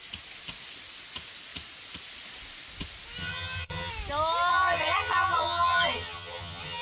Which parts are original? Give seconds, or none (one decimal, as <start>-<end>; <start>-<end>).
0.0-3.2; 3.9-4.5

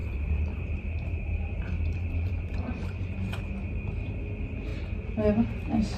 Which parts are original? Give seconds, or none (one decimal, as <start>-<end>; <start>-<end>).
3.4-6.0

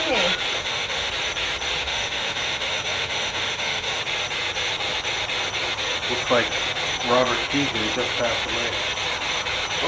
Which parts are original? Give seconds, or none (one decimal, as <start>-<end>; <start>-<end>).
0.0-0.6; 1.1-1.8; 4.0-9.9

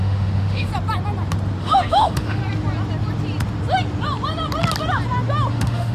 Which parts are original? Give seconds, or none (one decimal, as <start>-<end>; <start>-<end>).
0.7-1.6; 2.4-5.5

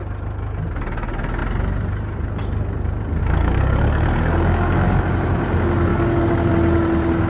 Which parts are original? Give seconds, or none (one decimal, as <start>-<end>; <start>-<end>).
0.0-3.2; 5.0-5.9; 6.5-7.3

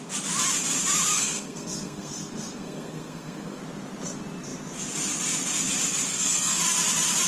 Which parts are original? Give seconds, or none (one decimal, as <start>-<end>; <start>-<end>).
0.0-1.1; 3.6-6.1; 6.6-7.3

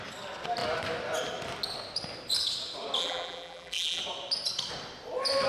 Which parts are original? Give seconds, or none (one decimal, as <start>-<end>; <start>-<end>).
0.0-3.0; 4.0-5.5

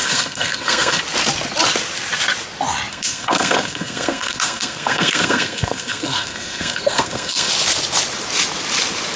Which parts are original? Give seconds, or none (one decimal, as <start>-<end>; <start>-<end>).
1.0-2.9; 7.5-9.2